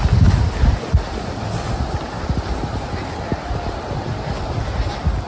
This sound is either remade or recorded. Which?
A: recorded